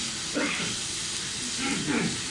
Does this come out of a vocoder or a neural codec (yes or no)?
no